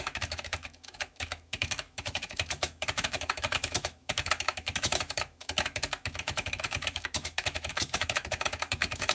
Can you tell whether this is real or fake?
fake